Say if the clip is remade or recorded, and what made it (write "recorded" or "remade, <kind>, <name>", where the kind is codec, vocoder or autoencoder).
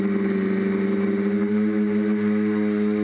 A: recorded